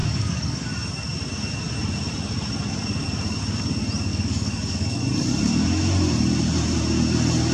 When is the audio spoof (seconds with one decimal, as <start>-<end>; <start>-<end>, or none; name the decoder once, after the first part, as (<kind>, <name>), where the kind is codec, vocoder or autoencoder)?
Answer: 0.0-0.7 (codec, DAC); 4.1-5.0